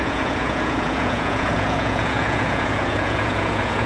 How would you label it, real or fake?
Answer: fake